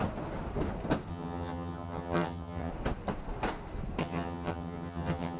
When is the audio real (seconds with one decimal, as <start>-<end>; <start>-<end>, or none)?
0.0-1.1; 2.7-4.0